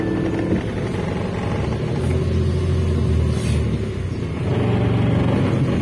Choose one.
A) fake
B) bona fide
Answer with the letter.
B